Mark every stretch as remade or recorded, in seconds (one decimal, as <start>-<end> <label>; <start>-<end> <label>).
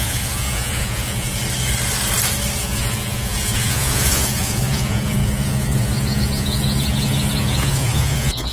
0.0-1.3 remade; 1.3-2.6 recorded; 2.6-8.5 remade